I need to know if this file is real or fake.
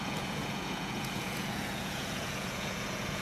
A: fake